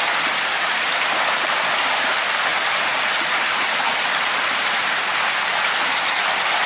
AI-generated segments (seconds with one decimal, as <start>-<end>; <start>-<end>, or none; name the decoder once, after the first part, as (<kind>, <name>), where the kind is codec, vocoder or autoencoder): none